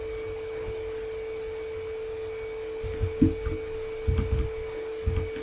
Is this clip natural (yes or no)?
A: yes